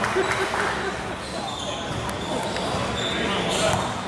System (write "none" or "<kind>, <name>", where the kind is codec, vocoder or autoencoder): none